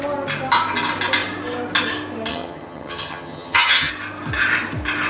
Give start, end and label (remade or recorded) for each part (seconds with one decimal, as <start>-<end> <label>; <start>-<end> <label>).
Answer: 0.0-2.3 recorded; 2.3-3.9 remade; 3.9-5.1 recorded